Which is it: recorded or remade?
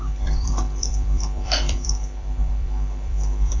remade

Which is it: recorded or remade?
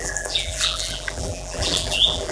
remade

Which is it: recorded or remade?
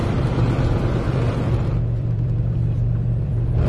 remade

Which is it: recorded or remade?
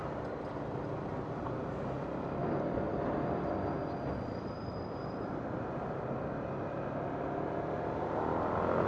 recorded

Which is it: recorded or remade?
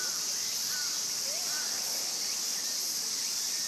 remade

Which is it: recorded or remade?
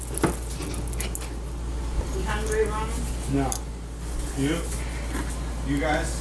recorded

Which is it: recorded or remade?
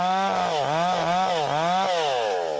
recorded